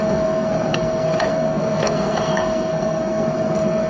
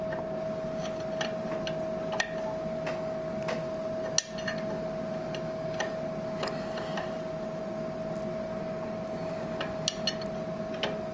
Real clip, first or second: second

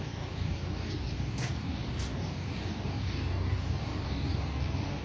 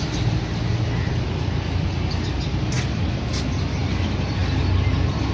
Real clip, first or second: second